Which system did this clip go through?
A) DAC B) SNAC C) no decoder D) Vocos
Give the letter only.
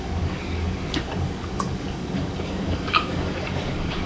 A